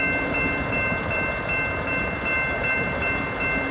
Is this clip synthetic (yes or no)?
no